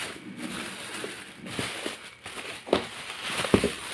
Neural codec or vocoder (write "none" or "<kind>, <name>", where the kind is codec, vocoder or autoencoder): none